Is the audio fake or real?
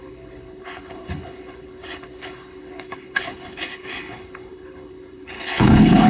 fake